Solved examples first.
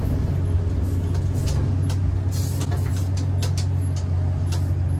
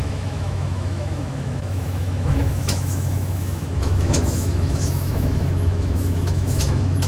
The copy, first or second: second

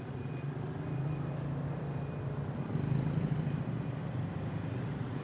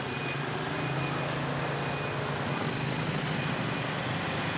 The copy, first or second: first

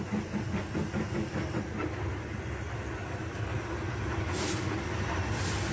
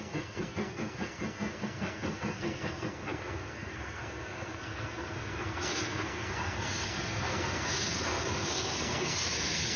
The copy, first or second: second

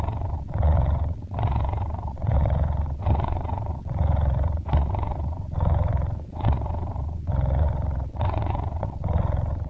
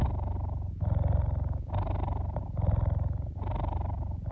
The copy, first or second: first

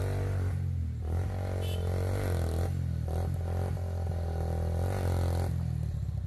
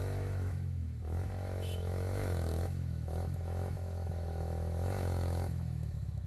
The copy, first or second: second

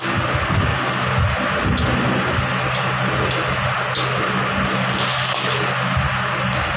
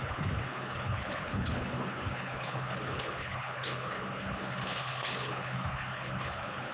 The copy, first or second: second